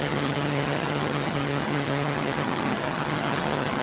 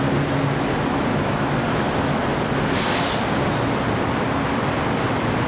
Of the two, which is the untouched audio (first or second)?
second